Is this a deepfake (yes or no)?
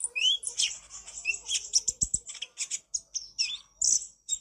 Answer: no